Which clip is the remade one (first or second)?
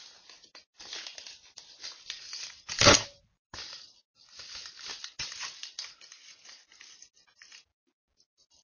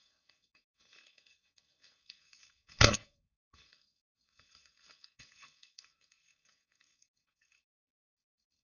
second